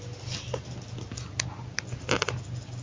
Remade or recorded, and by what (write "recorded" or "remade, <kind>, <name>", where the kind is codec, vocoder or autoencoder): recorded